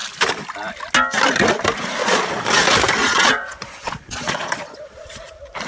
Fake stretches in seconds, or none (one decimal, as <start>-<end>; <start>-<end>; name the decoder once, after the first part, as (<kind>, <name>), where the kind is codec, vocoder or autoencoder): 2.0-2.5 (vocoder, Vocos); 3.0-5.2